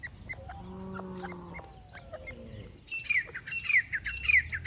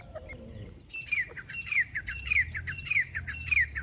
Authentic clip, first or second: first